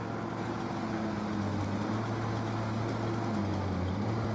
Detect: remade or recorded recorded